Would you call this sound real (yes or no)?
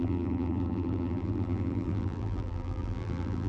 no